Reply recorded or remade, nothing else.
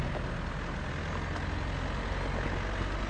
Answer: recorded